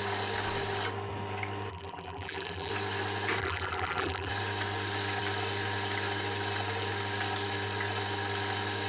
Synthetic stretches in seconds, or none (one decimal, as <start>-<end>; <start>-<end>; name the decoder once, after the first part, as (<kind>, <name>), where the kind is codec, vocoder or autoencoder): 1.7-2.7 (vocoder, BigVGAN v2); 3.4-4.3